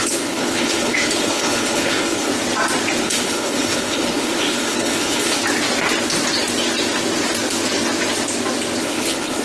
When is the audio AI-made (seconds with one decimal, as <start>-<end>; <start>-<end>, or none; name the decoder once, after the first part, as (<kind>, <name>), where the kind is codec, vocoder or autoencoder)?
0.0-2.3 (codec, HILCodec); 3.0-5.4; 8.8-9.4